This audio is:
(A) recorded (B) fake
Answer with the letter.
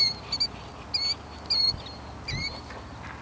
A